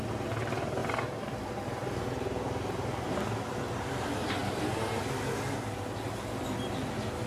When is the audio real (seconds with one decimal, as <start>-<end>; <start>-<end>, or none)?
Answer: 0.0-7.3